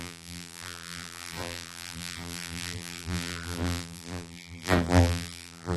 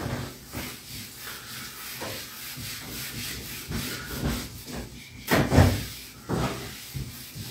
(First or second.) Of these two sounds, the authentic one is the second